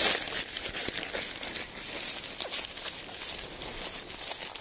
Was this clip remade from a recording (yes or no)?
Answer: no